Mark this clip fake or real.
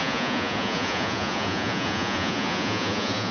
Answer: fake